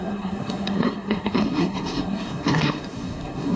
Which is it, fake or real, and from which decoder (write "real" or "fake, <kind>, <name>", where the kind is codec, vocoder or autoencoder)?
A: fake, codec, SNAC